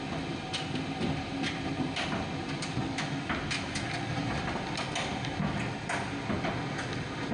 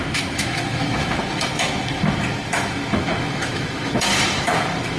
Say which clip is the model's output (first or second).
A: second